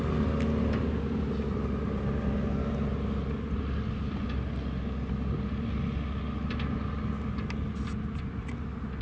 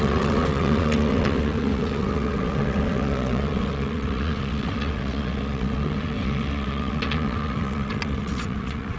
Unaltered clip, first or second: first